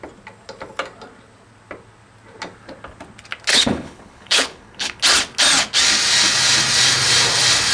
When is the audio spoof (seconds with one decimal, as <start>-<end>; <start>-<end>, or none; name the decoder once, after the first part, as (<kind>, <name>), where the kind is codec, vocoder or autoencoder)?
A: 3.5-5.0 (codec, HILCodec)